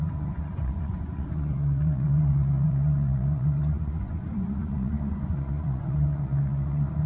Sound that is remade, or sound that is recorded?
remade